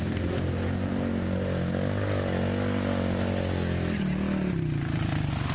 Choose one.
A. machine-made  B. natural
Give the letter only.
B